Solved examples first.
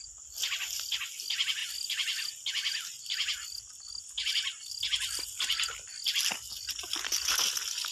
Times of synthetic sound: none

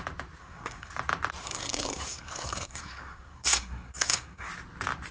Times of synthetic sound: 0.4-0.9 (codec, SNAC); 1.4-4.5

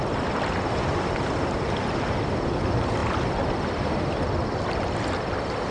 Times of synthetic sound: none

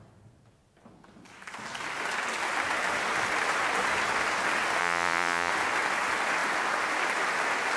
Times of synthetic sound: 4.8-5.5 (vocoder, Vocos)

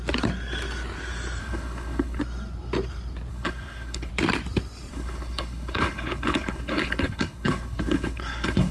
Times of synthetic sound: 1.4-2.2 (codec, HILCodec); 3.3-4.1; 4.9-8.7